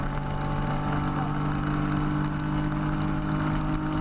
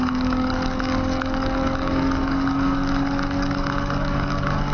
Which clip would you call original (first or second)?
first